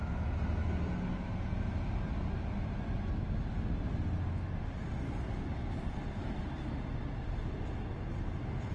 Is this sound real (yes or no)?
yes